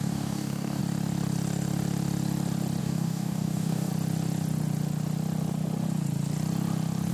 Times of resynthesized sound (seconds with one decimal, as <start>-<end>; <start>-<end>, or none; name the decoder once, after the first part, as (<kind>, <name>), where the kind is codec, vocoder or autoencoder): 0.0-0.8 (codec, DAC); 2.8-3.9